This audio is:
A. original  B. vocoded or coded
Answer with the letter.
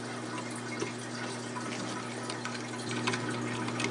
A